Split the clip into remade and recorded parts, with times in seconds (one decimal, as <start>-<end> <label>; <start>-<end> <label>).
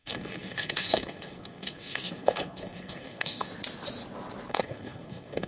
0.0-3.5 remade; 3.5-4.5 recorded; 4.5-5.5 remade